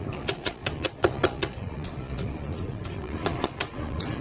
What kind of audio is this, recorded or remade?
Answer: remade